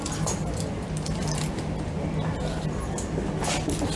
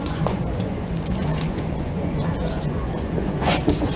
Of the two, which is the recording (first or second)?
first